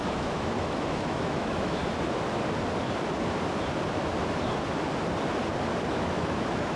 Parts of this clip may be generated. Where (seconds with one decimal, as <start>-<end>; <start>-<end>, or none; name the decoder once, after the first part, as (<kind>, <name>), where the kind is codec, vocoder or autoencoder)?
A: 0.0-1.8 (autoencoder, DAC-VAE); 5.9-6.8